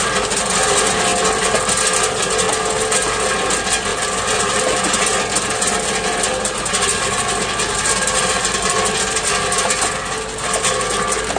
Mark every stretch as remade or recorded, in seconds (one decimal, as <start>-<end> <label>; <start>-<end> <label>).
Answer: 0.0-3.9 recorded; 3.9-4.6 remade; 4.6-11.4 recorded